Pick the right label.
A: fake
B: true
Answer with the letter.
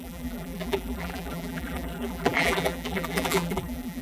A